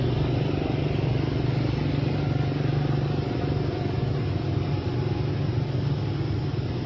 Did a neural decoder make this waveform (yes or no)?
no